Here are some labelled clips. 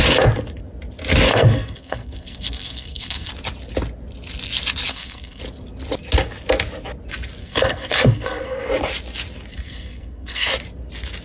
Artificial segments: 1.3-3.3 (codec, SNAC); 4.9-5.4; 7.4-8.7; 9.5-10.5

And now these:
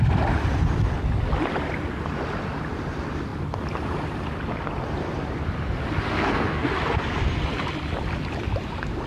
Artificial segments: 6.1-6.7 (codec, SNAC)

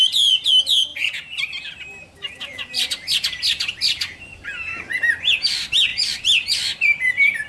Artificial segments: none

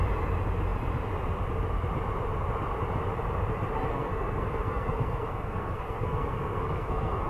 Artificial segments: 3.9-7.3 (codec, SNAC)

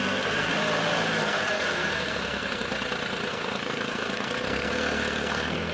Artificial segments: 0.0-0.5 (codec, SNAC); 1.2-2.7; 3.3-5.7

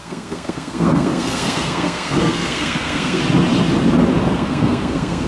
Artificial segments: 0.0-3.2 (codec, SNAC); 4.3-5.3